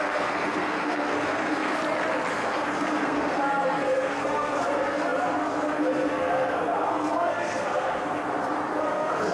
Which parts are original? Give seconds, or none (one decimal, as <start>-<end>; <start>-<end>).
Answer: 1.8-2.3; 8.2-8.8